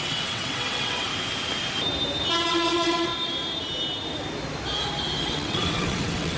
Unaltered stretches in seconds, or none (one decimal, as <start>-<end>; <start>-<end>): 1.1-2.5; 3.1-5.2